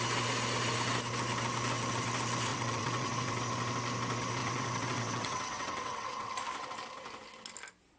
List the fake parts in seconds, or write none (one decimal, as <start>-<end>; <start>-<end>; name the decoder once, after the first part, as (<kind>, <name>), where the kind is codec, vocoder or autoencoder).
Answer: 2.5-3.4 (vocoder, WaveNeXt); 4.4-6.3